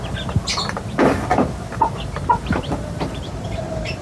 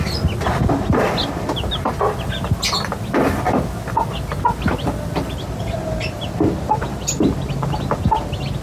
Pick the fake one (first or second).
first